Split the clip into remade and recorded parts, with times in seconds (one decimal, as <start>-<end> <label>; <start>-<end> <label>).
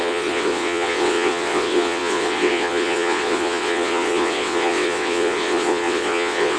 0.0-6.6 remade